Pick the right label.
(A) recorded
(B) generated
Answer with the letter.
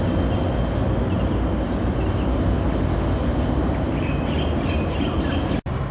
A